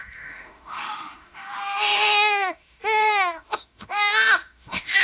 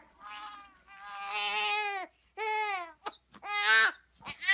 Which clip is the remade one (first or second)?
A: first